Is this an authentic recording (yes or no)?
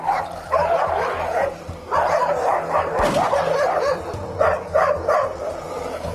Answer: no